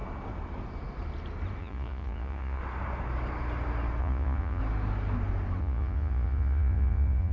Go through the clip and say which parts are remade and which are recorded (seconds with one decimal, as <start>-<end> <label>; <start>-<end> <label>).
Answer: 0.0-1.6 recorded; 1.6-2.6 remade; 2.6-4.0 recorded; 4.0-4.6 remade; 4.6-5.6 recorded; 5.6-7.3 remade